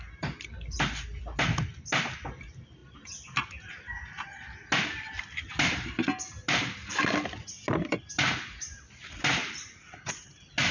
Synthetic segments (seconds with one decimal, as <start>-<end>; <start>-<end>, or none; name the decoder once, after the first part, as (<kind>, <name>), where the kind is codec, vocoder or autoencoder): none